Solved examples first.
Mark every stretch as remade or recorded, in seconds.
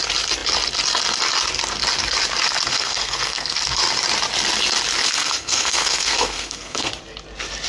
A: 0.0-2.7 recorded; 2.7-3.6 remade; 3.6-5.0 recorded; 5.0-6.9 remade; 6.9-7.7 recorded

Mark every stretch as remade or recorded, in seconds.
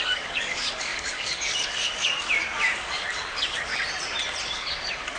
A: 0.0-3.7 remade; 3.7-4.5 recorded; 4.5-5.2 remade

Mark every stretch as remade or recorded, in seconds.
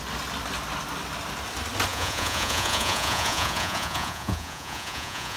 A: 0.0-1.9 recorded; 1.9-5.4 remade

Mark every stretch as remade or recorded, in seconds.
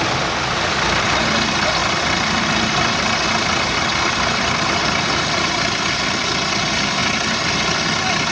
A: 0.0-8.3 recorded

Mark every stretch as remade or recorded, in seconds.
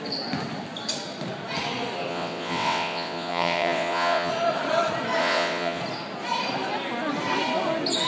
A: 0.0-2.1 recorded; 2.1-4.3 remade; 4.3-5.2 recorded; 5.2-5.8 remade; 5.8-8.1 recorded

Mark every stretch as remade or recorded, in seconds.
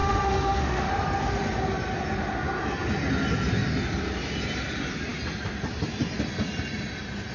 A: 0.0-0.9 remade; 0.9-7.3 recorded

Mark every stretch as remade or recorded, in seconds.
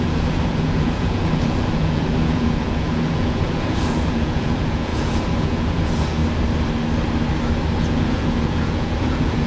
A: 0.0-6.2 remade; 6.2-7.7 recorded; 7.7-9.5 remade